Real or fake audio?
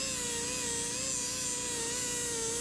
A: real